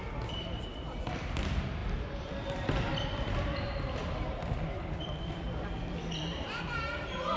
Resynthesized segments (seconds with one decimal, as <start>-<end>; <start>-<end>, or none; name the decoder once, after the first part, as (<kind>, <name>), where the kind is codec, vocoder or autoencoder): 1.8-3.0 (vocoder, BigVGAN v2); 4.0-7.4